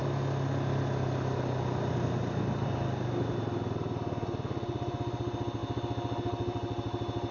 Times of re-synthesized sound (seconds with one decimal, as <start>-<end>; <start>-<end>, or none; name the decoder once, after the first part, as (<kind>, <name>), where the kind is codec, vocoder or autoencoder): none